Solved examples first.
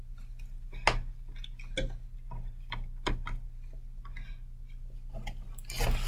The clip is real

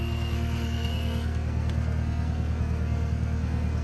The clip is fake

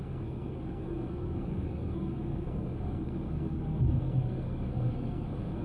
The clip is fake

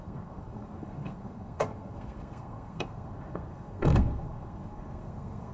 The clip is fake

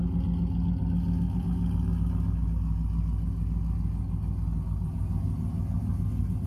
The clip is real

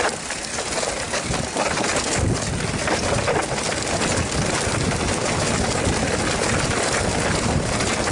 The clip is real